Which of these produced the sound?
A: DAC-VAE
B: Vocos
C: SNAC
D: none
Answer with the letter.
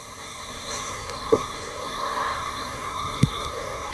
C